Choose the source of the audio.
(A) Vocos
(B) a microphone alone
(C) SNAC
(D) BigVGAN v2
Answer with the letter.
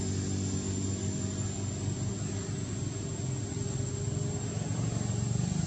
B